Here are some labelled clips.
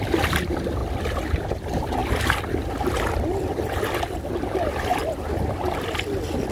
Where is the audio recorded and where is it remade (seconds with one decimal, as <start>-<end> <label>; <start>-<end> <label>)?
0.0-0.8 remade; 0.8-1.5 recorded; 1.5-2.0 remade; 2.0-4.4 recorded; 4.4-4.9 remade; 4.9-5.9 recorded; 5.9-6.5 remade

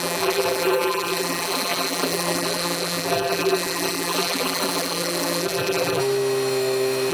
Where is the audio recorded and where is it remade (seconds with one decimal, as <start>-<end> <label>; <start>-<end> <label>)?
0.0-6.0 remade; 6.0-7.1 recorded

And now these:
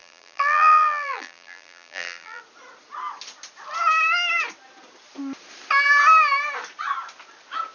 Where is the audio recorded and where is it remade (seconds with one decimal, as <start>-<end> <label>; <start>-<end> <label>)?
0.0-2.4 remade; 2.4-7.7 recorded

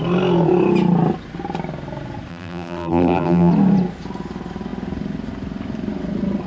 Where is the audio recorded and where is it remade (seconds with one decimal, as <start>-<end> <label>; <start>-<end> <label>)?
0.0-2.3 recorded; 2.3-3.5 remade; 3.5-6.5 recorded